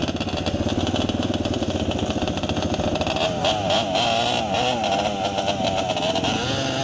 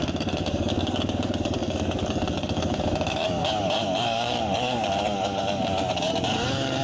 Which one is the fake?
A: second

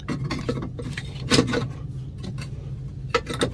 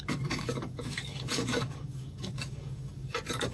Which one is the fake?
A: second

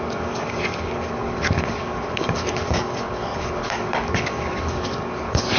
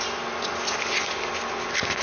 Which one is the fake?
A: first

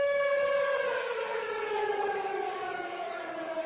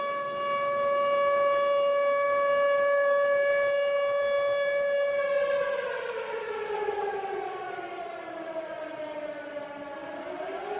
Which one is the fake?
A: first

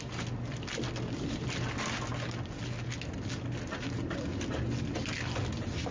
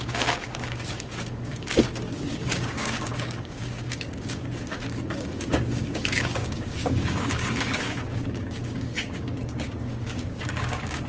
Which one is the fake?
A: second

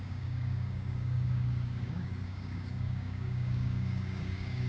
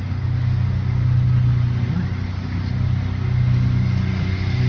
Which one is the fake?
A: first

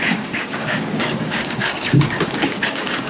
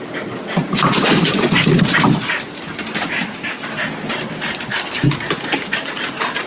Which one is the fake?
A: first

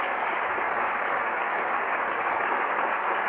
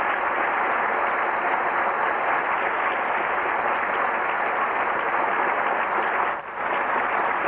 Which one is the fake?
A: first